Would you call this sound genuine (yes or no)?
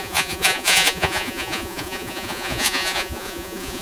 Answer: no